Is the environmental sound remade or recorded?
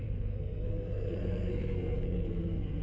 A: remade